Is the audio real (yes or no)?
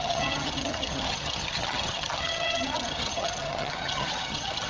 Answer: no